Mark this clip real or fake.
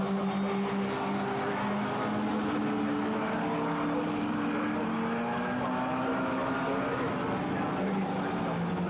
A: real